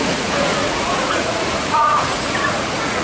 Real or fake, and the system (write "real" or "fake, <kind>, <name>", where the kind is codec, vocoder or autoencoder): fake, vocoder, Vocos